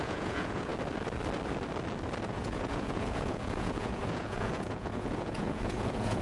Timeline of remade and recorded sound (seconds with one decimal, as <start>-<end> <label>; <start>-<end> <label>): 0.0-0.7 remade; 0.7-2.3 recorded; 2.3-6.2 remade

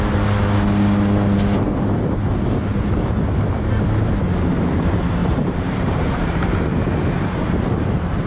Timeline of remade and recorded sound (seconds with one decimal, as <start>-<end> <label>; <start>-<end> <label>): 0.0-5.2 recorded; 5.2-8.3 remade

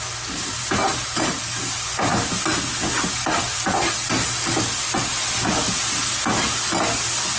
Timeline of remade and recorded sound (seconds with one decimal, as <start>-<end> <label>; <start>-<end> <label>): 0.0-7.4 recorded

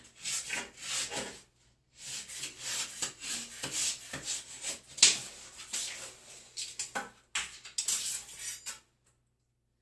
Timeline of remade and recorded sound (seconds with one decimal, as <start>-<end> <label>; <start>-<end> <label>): 0.0-9.8 recorded

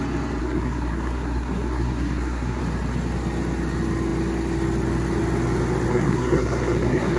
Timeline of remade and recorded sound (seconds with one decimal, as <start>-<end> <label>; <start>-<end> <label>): 0.0-0.4 recorded; 0.4-2.6 remade; 2.6-5.9 recorded; 5.9-7.2 remade

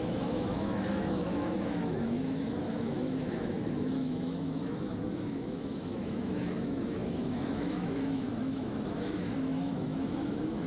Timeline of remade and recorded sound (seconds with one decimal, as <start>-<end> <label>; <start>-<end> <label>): 0.0-10.7 remade

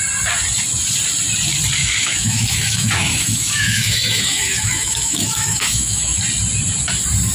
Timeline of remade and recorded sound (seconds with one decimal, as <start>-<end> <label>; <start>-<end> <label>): 0.0-1.8 recorded; 1.8-6.2 remade; 6.2-7.3 recorded

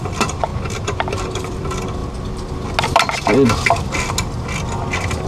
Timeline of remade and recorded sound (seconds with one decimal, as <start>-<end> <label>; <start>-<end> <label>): 0.0-0.5 remade; 0.5-1.1 recorded; 1.1-2.0 remade; 2.0-5.3 recorded